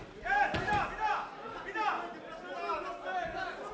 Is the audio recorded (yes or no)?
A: yes